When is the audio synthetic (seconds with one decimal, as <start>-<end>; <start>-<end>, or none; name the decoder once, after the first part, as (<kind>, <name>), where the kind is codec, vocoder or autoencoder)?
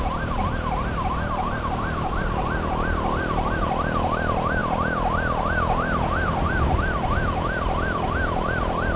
none